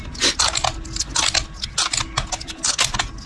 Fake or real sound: real